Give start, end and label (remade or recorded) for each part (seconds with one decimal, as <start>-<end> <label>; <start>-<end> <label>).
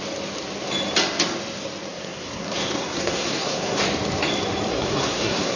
0.0-1.9 recorded; 1.9-3.8 remade; 3.8-4.7 recorded; 4.7-5.6 remade